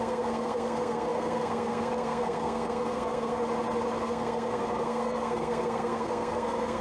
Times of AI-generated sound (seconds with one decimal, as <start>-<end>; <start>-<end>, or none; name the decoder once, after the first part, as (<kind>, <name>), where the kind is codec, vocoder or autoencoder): 0.0-3.4 (codec, SNAC); 4.0-6.8